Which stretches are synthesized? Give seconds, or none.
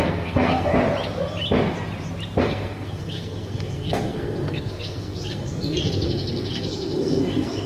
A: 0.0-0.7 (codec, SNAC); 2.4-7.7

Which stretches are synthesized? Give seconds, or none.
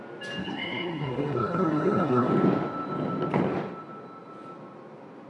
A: 0.4-2.3 (codec, SNAC)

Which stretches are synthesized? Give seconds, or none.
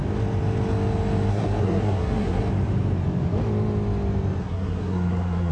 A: 1.3-2.4 (codec, SNAC); 4.4-5.5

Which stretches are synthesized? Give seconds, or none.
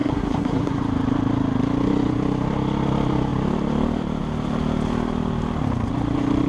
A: 0.0-0.8 (codec, SNAC)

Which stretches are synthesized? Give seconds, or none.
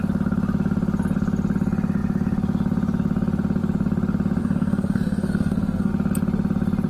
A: 4.4-5.9 (codec, SNAC)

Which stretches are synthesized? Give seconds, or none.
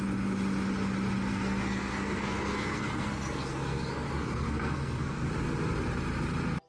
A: 1.3-5.3 (codec, SNAC)